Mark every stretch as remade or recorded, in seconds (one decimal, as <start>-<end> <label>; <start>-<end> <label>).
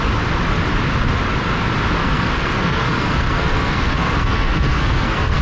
0.0-2.0 recorded; 2.0-5.4 remade